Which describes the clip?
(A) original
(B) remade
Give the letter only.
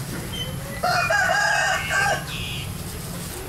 A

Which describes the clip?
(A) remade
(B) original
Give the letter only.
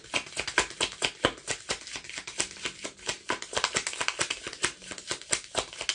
B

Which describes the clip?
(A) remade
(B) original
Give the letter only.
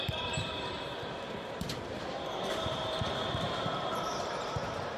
A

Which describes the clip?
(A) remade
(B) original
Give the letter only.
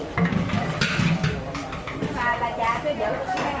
B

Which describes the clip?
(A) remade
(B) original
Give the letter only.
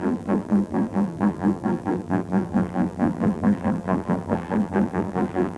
A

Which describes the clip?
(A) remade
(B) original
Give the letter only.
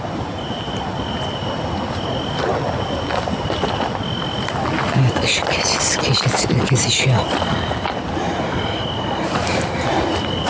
B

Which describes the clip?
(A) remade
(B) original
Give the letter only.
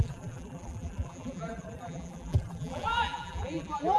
A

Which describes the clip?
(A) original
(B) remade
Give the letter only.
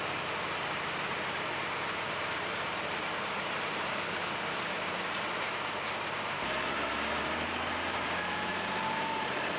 B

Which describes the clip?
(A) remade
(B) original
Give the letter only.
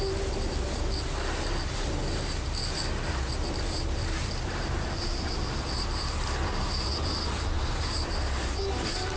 B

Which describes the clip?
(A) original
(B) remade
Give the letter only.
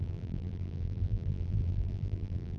B